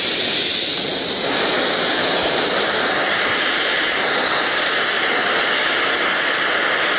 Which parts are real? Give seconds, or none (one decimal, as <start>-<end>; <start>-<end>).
0.0-0.9; 4.7-7.0